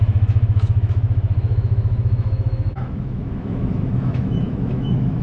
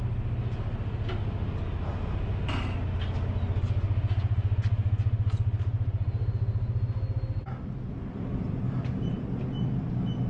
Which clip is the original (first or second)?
second